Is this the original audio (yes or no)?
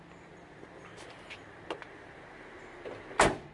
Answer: yes